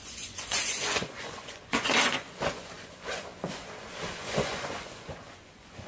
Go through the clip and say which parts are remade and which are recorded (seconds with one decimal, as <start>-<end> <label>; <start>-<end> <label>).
0.0-5.9 remade